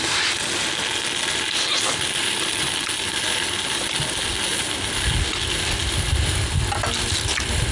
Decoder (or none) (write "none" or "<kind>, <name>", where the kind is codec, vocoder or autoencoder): none